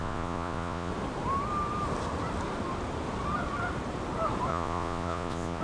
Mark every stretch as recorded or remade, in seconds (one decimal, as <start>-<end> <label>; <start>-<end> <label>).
0.0-0.9 remade; 0.9-4.5 recorded; 4.5-5.6 remade